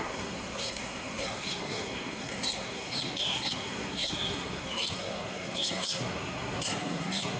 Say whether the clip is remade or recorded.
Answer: remade